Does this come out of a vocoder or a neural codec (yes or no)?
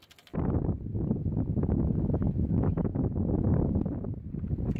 no